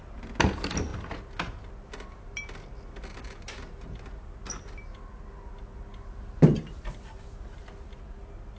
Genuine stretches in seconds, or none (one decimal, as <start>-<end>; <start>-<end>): 0.0-6.5; 7.6-8.6